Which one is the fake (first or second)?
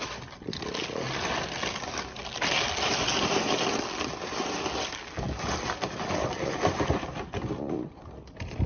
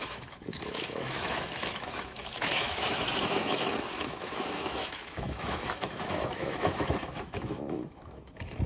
second